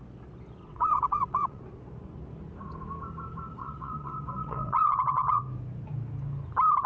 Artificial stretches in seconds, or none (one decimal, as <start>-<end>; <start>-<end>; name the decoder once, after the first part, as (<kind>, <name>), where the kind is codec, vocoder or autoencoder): 0.6-1.6 (vocoder, WaveNeXt); 3.6-5.4